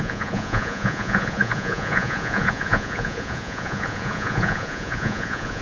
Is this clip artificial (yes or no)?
yes